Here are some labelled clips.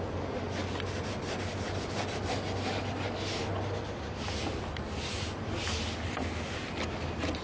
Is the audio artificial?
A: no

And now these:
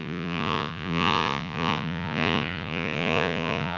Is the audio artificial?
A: yes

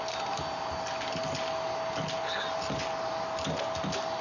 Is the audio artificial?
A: no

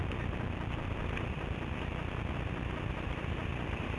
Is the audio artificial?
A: no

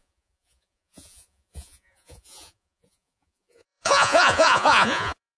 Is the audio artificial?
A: yes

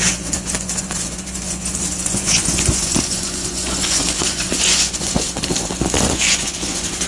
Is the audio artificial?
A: yes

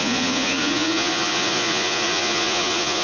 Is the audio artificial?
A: yes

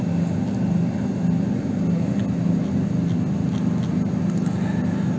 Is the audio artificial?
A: no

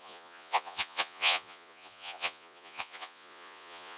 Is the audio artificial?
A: yes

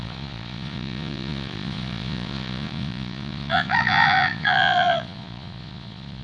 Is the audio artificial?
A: yes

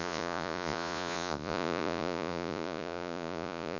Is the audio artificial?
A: yes